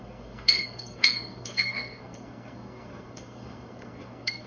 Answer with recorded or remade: remade